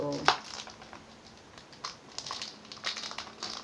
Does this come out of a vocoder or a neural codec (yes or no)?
no